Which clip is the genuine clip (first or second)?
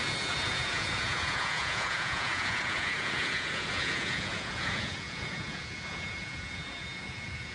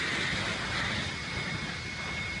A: second